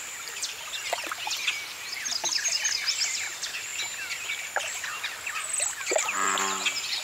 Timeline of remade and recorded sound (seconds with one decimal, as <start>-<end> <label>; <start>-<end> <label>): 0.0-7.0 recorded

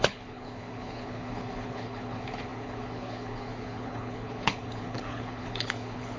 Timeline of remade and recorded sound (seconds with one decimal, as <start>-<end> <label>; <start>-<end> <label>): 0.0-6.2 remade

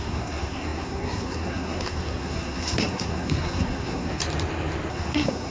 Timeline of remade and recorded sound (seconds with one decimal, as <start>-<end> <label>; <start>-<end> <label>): 0.0-4.2 remade; 4.2-4.9 recorded; 4.9-5.5 remade

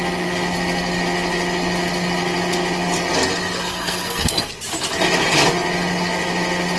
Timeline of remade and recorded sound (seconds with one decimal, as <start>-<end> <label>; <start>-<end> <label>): 0.0-3.7 recorded; 3.7-4.5 remade; 4.5-6.8 recorded

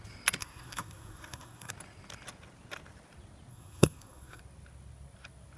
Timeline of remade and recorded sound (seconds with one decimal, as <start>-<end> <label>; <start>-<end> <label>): 0.0-0.4 recorded; 0.4-1.7 remade; 1.7-3.5 recorded; 3.5-4.4 remade; 4.4-5.6 recorded

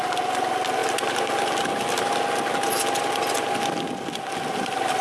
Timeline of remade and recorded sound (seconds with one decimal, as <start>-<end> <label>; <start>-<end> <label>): 0.0-5.0 recorded

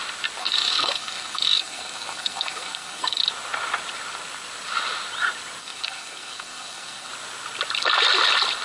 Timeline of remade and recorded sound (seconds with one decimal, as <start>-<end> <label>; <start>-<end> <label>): 0.0-0.4 recorded; 0.4-3.2 remade; 3.2-5.6 recorded; 5.6-7.1 remade; 7.1-8.6 recorded